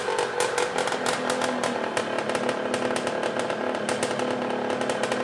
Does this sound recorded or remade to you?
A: recorded